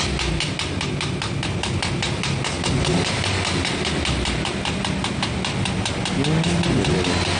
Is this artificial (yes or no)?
no